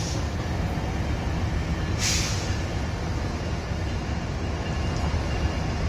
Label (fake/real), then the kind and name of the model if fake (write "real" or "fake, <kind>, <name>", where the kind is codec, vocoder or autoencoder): real